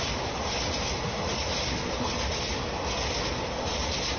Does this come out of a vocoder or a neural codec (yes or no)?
no